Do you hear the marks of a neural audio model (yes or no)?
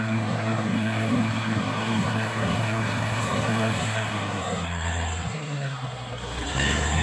yes